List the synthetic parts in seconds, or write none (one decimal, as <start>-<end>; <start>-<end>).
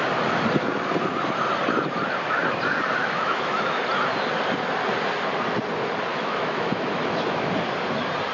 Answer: 3.0-3.8; 6.1-7.5